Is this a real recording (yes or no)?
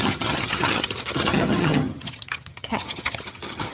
no